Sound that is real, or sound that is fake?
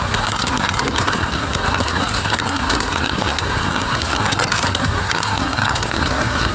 fake